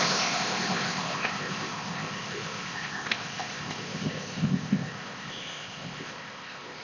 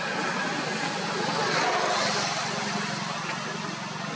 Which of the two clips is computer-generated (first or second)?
first